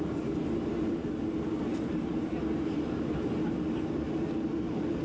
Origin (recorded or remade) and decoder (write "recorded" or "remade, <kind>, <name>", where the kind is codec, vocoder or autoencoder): recorded